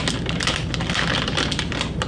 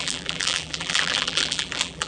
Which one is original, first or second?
first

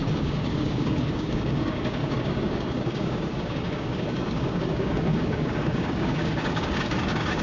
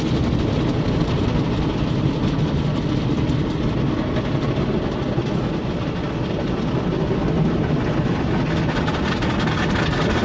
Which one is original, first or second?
second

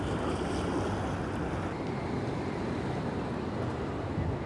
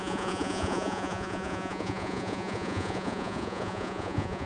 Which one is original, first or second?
first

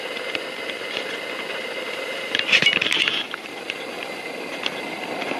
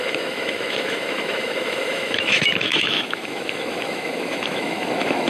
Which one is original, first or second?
first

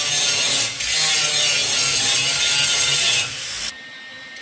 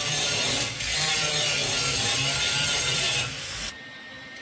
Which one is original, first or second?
first